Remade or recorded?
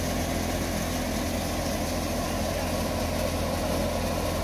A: recorded